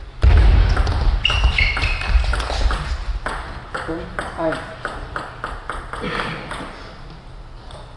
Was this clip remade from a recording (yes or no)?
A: no